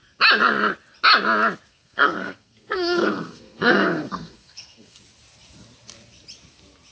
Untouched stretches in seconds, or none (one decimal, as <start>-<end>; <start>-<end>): 0.0-1.7; 5.0-6.9

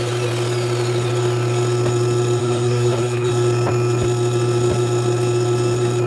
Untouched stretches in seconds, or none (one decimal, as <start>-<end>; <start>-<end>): 0.0-2.4; 3.3-6.1